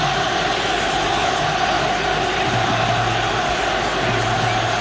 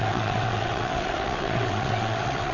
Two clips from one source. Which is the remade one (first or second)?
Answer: second